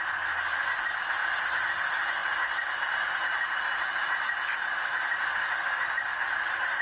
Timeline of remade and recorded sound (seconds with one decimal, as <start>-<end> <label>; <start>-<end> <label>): 0.0-6.8 recorded